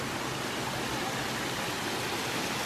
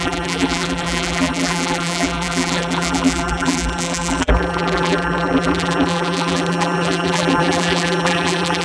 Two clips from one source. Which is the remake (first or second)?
second